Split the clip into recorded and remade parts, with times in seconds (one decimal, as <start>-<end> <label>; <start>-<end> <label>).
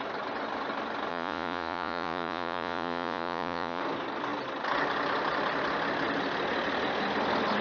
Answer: 0.0-1.1 recorded; 1.1-3.8 remade; 3.8-7.6 recorded